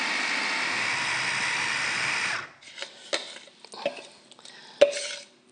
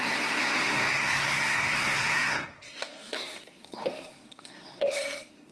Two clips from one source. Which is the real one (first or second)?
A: first